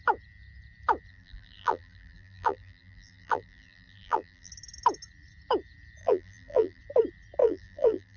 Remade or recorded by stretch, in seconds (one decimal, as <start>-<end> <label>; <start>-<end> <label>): 0.0-1.1 recorded; 1.1-4.5 remade; 4.5-6.0 recorded; 6.0-6.8 remade; 6.8-7.4 recorded; 7.4-8.2 remade

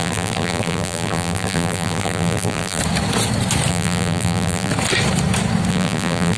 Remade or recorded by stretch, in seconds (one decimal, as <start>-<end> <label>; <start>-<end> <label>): 0.0-2.8 remade; 2.8-3.7 recorded; 3.7-4.7 remade; 4.7-5.7 recorded; 5.7-6.4 remade

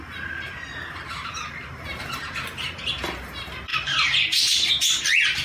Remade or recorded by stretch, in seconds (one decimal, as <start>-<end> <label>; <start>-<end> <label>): 0.0-1.1 recorded; 1.1-2.2 remade; 2.2-3.7 recorded; 3.7-4.7 remade; 4.7-5.4 recorded